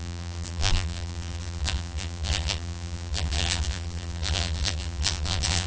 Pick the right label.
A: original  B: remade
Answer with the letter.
B